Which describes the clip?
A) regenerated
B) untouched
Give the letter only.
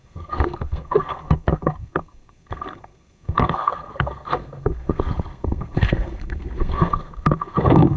A